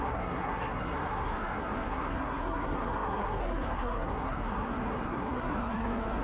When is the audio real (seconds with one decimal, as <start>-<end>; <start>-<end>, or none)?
none